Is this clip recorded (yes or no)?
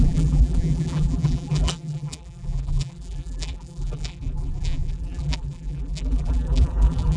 no